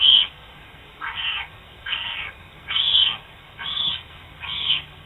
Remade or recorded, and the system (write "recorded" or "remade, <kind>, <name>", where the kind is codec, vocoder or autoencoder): remade, codec, SNAC